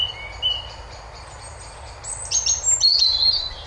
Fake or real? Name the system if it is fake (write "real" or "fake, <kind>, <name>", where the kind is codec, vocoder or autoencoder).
real